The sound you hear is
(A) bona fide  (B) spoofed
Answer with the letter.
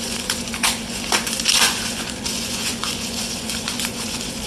B